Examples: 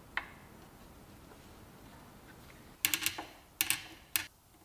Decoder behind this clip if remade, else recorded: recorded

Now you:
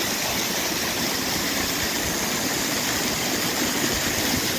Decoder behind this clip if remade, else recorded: recorded